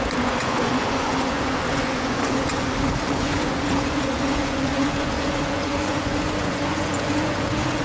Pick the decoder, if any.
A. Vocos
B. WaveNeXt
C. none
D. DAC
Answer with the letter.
A